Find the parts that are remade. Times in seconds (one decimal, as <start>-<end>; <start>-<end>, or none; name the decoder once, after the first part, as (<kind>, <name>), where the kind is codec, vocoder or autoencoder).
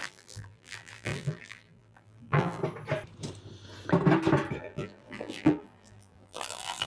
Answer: 0.0-2.6 (vocoder, BigVGAN v2); 4.6-6.9